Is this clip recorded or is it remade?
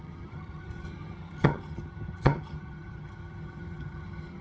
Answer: remade